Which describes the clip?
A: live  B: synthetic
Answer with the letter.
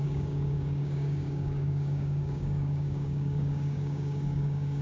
B